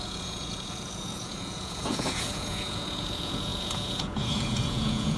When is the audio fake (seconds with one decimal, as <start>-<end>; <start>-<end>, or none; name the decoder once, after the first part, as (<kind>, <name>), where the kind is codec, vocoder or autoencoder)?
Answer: 0.0-5.2 (vocoder, Vocos)